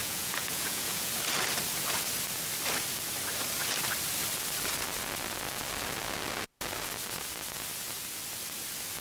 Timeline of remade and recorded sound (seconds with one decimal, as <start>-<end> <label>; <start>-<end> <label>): 0.0-1.1 remade; 1.1-9.0 recorded